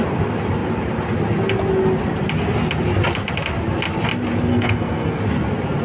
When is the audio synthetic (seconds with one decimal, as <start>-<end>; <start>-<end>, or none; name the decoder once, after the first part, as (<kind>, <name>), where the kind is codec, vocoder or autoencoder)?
4.5-5.2 (codec, SNAC)

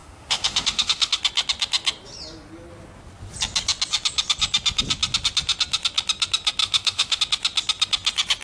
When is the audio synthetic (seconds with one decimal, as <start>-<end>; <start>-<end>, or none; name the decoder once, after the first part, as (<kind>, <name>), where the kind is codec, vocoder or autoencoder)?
0.0-1.2 (autoencoder, DAC-VAE); 6.6-7.2